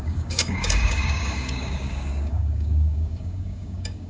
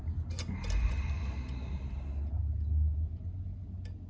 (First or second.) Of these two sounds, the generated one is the first